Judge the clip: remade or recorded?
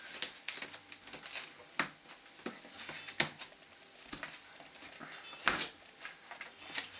recorded